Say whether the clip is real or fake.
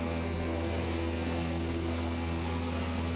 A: fake